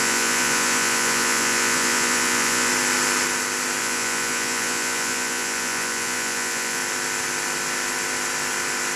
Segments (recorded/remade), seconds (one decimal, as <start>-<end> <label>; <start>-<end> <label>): 0.0-2.7 remade; 2.7-3.8 recorded; 3.8-6.8 remade; 6.8-9.0 recorded